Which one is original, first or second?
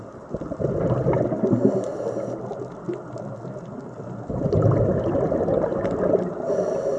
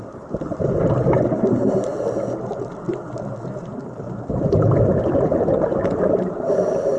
first